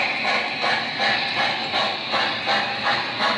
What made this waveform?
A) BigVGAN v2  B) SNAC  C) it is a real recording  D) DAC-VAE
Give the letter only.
C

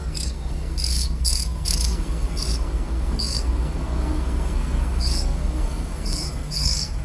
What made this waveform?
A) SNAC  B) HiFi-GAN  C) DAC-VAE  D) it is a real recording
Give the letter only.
A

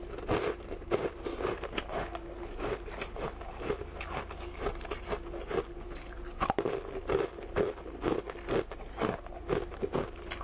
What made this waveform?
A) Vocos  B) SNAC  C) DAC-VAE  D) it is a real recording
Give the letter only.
D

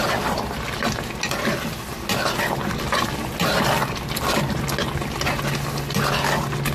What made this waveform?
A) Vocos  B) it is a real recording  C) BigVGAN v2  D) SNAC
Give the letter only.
B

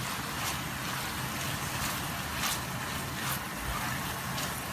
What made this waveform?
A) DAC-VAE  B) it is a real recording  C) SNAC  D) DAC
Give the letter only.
B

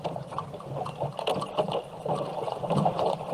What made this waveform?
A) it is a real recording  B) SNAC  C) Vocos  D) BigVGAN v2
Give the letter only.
D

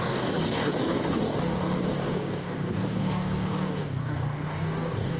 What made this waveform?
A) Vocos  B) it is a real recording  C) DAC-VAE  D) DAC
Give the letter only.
D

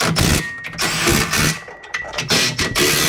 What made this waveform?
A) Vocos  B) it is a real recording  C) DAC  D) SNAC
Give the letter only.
B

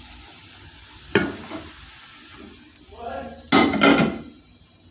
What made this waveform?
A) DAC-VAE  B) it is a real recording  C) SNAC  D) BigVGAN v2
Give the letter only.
B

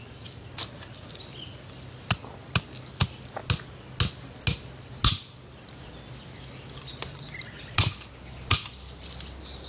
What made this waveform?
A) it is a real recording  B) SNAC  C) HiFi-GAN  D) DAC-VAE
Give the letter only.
A